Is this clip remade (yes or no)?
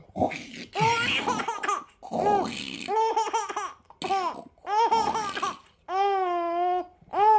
no